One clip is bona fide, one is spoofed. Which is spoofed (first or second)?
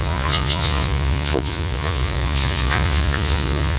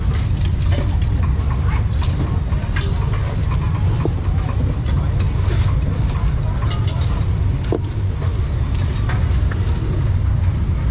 first